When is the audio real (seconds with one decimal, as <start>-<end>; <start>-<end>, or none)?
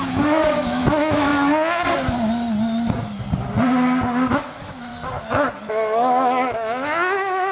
1.3-4.3; 4.9-5.7